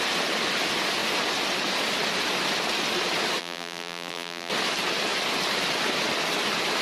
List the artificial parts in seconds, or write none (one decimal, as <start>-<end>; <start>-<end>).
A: 3.4-4.5